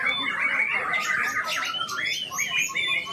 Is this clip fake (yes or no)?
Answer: no